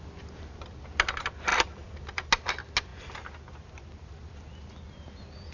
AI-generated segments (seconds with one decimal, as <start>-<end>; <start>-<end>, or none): 1.5-2.3